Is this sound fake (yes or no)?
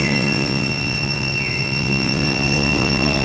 yes